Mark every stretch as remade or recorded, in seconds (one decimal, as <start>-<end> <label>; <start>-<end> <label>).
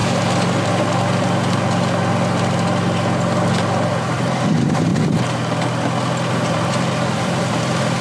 0.0-4.0 recorded; 4.0-4.9 remade; 4.9-6.3 recorded; 6.3-8.0 remade